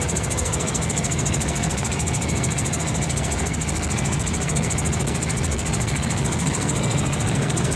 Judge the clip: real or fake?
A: fake